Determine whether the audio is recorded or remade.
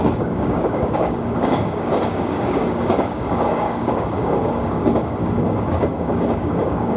remade